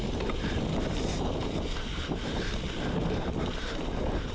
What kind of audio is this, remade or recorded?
recorded